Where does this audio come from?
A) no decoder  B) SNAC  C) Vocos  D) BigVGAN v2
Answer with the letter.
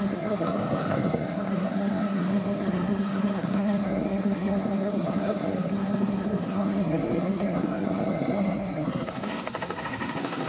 B